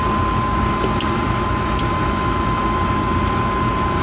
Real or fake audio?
real